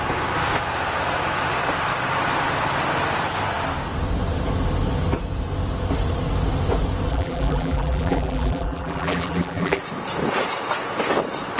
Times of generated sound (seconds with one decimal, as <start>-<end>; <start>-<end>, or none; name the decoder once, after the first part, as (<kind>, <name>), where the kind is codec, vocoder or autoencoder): 7.1-9.8 (vocoder, BigVGAN v2)